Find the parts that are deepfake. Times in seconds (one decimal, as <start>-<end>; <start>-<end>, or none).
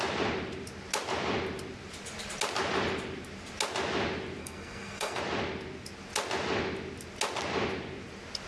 4.4-5.2